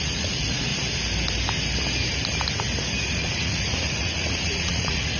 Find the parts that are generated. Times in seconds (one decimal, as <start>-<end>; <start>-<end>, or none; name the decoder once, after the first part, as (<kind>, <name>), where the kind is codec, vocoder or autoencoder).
0.0-0.7 (vocoder, Vocos); 3.1-5.2